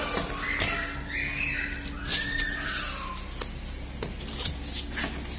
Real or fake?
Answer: real